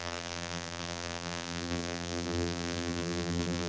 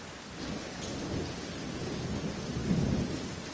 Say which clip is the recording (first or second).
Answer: second